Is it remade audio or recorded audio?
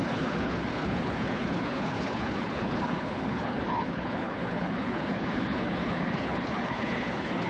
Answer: remade